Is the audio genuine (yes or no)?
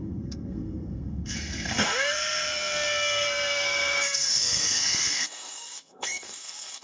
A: no